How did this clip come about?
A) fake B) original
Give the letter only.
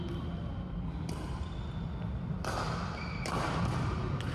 B